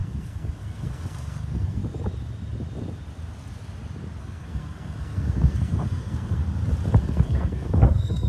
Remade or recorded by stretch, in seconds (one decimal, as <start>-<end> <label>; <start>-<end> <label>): 0.0-1.8 remade; 1.8-4.2 recorded; 4.2-6.4 remade; 6.4-7.0 recorded; 7.0-8.3 remade